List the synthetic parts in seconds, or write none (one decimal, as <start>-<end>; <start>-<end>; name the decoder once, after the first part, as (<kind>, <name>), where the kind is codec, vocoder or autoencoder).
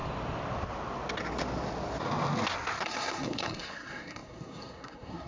2.8-5.3 (codec, SNAC)